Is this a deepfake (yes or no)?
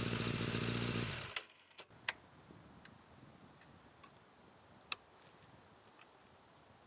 no